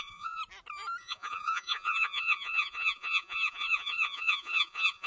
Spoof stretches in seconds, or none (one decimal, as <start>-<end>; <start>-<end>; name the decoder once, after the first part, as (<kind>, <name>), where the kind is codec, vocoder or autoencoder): 0.0-0.4 (vocoder, Vocos); 1.0-5.1